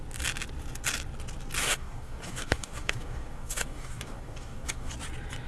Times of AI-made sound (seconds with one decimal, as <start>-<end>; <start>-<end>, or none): 1.6-4.9